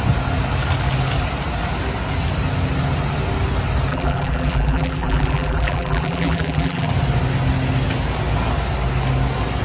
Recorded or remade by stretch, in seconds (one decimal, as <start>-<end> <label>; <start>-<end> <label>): 0.0-3.9 recorded; 3.9-6.9 remade; 6.9-9.6 recorded